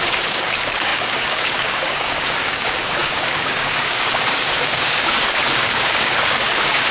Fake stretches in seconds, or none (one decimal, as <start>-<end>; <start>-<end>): 0.0-6.9